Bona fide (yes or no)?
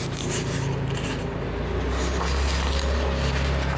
yes